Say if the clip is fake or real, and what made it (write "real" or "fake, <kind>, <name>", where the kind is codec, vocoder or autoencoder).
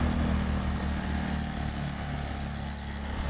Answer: real